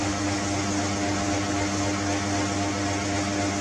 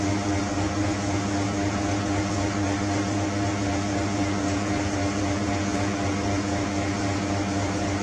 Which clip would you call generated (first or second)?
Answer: second